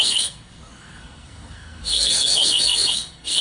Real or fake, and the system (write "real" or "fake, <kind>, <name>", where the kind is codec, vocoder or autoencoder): fake, codec, SNAC